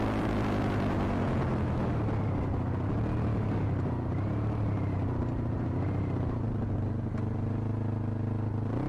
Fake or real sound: real